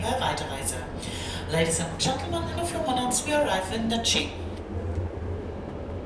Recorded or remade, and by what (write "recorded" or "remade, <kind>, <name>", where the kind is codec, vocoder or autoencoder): recorded